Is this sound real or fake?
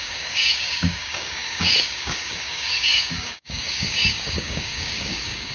fake